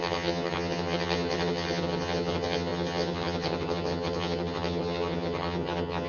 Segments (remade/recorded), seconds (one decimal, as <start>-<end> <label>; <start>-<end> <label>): 0.0-6.1 remade

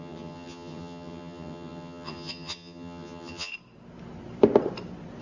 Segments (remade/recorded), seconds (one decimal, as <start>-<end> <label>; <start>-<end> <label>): 0.0-3.5 remade; 3.5-5.2 recorded

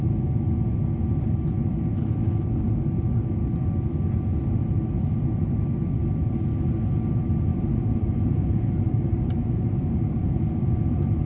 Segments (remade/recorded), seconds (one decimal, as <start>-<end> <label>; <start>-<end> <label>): 0.0-11.3 recorded

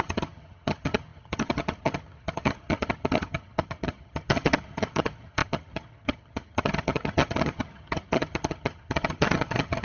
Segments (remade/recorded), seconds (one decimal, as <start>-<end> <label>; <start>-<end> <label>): 0.0-9.8 remade

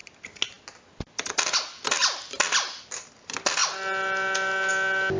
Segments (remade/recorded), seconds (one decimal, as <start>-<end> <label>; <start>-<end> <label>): 0.0-5.2 recorded